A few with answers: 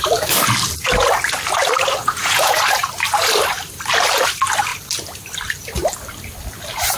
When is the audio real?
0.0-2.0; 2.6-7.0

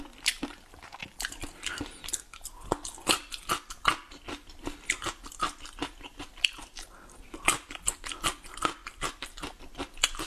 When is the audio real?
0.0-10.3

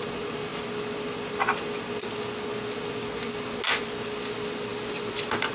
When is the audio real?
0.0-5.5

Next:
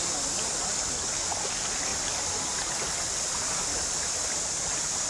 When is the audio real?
0.0-5.1